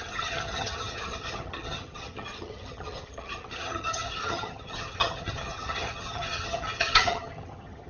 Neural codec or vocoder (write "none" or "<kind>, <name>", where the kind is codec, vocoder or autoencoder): vocoder, HiFi-GAN